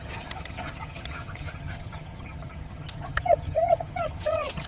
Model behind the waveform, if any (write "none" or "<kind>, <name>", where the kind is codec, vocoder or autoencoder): vocoder, HiFi-GAN